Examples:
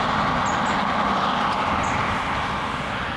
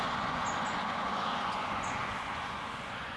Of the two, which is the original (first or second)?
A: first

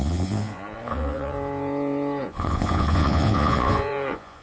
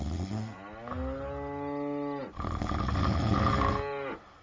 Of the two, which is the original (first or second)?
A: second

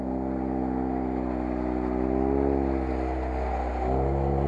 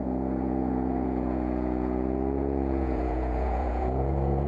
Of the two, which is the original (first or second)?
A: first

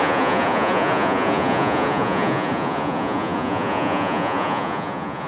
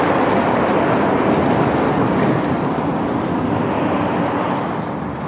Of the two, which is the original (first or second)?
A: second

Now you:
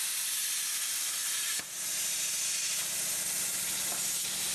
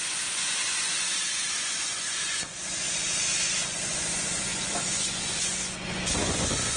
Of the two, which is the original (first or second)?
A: first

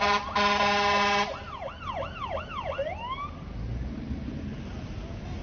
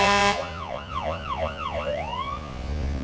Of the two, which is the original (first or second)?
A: first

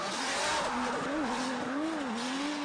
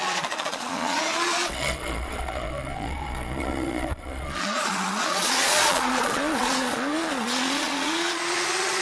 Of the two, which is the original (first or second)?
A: first